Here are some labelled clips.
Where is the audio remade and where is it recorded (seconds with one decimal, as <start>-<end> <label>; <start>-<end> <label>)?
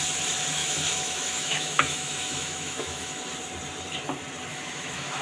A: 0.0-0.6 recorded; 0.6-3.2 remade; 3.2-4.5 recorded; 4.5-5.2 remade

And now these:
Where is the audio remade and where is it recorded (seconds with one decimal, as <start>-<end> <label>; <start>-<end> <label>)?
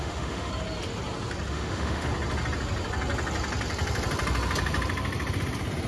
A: 0.0-0.5 remade; 0.5-1.5 recorded; 1.5-2.1 remade; 2.1-5.9 recorded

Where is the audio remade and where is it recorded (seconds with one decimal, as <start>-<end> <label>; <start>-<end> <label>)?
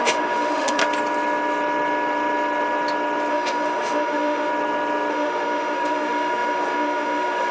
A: 0.0-0.8 remade; 0.8-3.3 recorded; 3.3-4.5 remade; 4.5-5.1 recorded; 5.1-7.5 remade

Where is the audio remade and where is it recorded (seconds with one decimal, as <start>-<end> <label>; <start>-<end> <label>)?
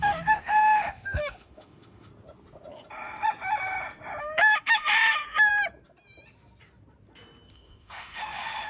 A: 0.0-2.1 remade; 2.1-4.2 recorded; 4.2-5.5 remade; 5.5-7.5 recorded; 7.5-8.7 remade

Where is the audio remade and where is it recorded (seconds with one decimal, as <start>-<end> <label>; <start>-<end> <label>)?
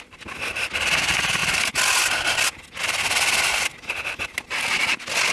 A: 0.0-5.3 recorded